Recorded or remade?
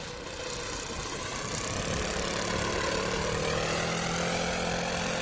recorded